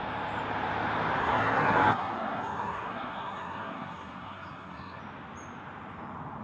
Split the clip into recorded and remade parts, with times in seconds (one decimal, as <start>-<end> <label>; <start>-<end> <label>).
0.0-1.2 recorded; 1.2-5.0 remade; 5.0-6.4 recorded